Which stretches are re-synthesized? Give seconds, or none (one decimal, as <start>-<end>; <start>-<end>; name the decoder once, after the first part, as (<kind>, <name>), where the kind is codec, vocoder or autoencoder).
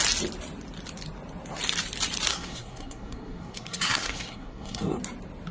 2.3-5.0 (codec, SNAC)